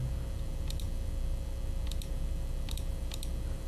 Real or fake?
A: real